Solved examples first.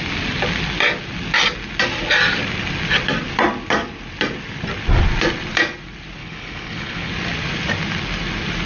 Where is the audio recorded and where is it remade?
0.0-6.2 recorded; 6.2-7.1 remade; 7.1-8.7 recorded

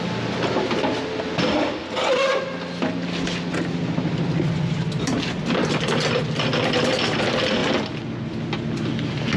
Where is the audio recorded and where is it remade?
0.0-9.4 recorded

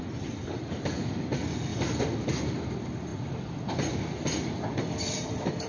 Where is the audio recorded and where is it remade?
0.0-5.7 remade

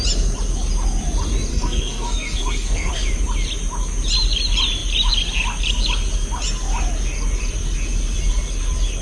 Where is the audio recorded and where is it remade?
0.0-1.5 recorded; 1.5-2.9 remade; 2.9-9.0 recorded

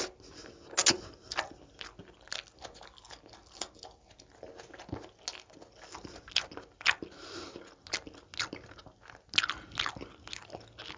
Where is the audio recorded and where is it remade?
0.0-11.0 recorded

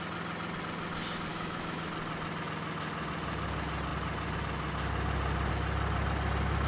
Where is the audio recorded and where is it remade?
0.0-1.3 recorded; 1.3-1.9 remade; 1.9-6.7 recorded